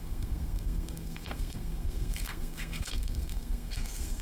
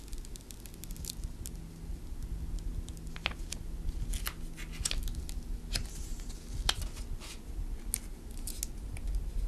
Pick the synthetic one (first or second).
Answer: first